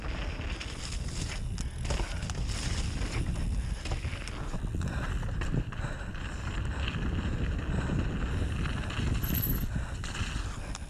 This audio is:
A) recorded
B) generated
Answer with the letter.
A